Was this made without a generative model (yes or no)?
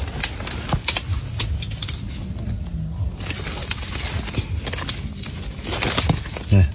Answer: yes